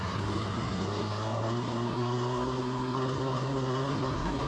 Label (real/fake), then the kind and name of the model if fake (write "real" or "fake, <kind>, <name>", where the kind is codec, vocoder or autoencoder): fake, codec, SNAC